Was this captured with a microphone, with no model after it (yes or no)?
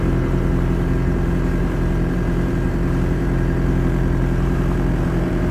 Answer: no